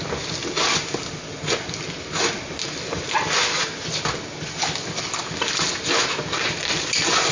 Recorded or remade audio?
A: recorded